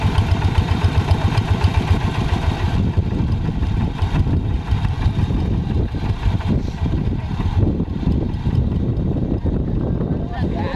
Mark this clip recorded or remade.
remade